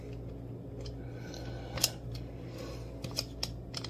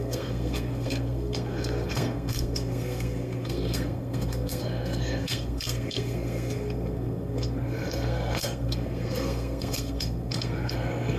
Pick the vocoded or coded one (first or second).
second